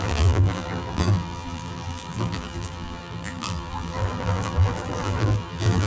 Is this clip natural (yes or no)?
no